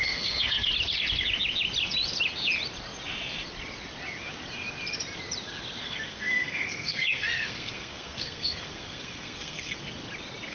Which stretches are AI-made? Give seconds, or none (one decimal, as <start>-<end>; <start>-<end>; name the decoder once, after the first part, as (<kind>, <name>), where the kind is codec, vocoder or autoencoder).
0.0-0.7 (codec, SNAC); 5.8-9.8